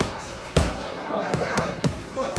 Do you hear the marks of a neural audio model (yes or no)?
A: yes